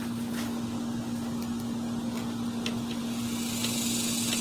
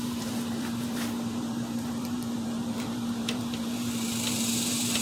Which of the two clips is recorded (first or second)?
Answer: first